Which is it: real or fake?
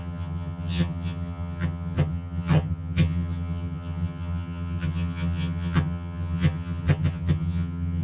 fake